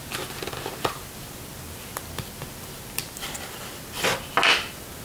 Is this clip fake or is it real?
real